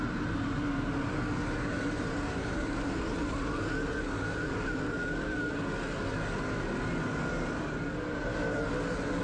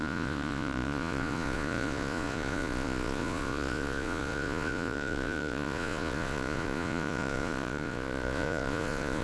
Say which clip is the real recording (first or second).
first